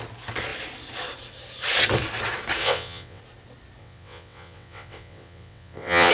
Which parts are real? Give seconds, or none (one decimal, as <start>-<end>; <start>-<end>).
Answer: 0.0-2.6; 3.2-3.8